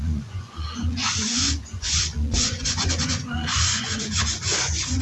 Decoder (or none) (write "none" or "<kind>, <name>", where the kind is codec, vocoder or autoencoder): vocoder, Vocos